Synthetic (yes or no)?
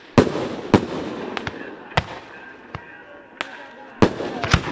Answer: no